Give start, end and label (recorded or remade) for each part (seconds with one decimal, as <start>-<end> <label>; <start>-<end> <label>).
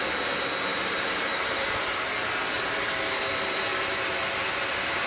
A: 0.0-0.7 recorded; 0.7-2.1 remade; 2.1-3.7 recorded; 3.7-4.3 remade; 4.3-5.1 recorded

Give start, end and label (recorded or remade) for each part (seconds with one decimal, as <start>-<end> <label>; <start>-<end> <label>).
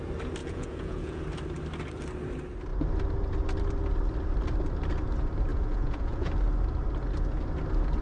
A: 0.0-0.4 recorded; 0.4-1.2 remade; 1.2-5.5 recorded; 5.5-6.3 remade; 6.3-8.0 recorded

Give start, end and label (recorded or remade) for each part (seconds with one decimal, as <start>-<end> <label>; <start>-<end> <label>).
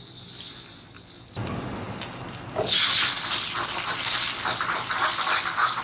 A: 0.0-5.8 recorded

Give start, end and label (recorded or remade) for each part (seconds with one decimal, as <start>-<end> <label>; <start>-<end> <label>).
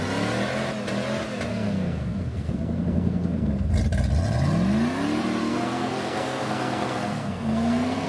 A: 0.0-1.5 recorded; 1.5-3.7 remade; 3.7-5.4 recorded; 5.4-8.1 remade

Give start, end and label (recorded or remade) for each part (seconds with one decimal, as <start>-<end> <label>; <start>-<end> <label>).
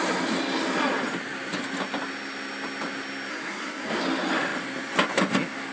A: 0.0-3.3 recorded; 3.3-4.0 remade; 4.0-5.7 recorded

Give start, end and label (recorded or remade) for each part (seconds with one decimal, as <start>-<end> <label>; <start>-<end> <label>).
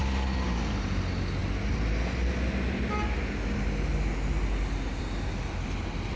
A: 0.0-6.2 recorded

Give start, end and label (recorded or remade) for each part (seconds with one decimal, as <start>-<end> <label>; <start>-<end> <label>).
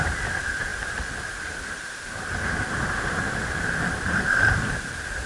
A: 0.0-5.3 recorded